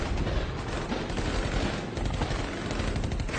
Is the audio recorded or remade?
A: recorded